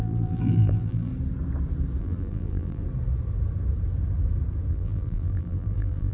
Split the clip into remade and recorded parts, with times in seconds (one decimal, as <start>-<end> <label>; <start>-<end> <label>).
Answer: 0.0-1.1 remade; 1.1-2.0 recorded; 2.0-2.8 remade; 2.8-4.7 recorded; 4.7-6.1 remade